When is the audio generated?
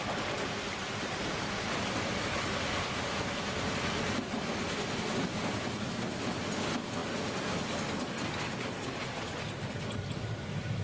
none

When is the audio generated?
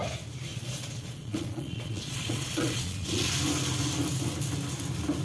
0.5-3.3 (vocoder, Vocos)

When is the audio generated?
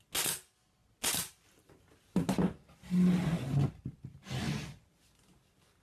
none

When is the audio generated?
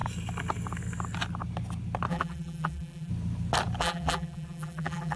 2.1-3.1 (vocoder, BigVGAN v2); 3.8-5.2